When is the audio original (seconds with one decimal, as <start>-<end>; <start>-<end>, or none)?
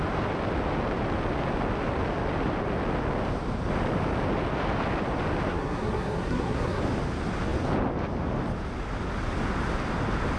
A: 0.0-5.5; 6.8-10.4